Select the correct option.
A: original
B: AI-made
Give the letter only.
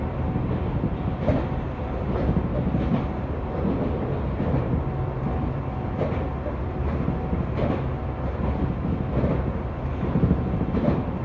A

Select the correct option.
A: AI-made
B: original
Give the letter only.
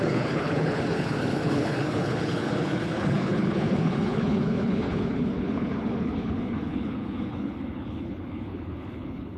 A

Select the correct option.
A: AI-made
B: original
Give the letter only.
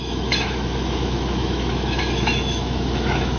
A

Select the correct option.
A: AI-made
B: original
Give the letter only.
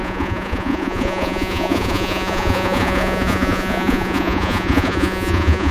A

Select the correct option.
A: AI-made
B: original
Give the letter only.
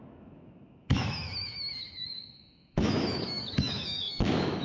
A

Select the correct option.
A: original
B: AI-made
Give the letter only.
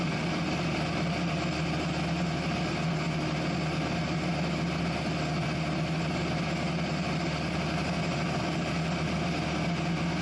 A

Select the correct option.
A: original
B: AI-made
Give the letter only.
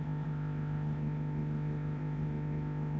B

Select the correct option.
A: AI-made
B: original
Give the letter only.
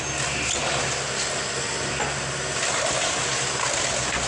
B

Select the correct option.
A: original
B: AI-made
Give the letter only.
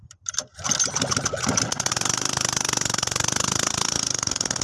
B